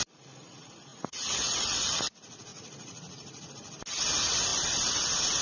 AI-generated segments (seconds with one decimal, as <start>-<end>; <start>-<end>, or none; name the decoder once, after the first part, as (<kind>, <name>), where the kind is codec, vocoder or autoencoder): 0.9-2.1 (vocoder, Vocos); 2.5-3.5